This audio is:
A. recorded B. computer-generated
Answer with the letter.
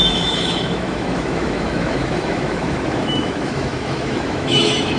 B